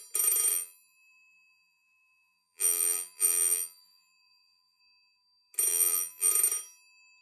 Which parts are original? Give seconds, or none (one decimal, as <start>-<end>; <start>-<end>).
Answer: 0.0-0.5; 4.8-5.7; 6.3-7.2